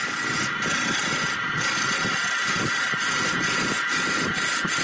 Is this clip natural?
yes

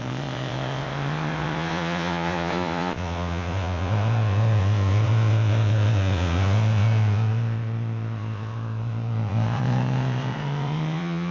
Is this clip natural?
no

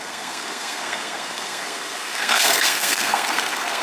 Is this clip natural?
no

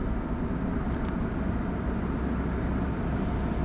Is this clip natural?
yes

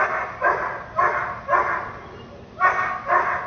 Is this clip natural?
yes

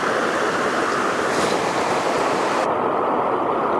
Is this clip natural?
yes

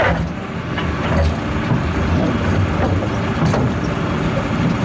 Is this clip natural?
yes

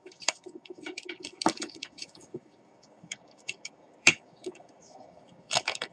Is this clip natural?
no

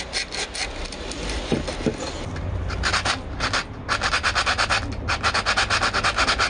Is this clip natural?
yes